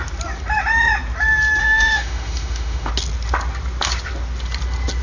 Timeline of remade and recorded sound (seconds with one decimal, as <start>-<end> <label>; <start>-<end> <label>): 0.0-1.6 recorded; 1.6-2.9 remade; 2.9-5.0 recorded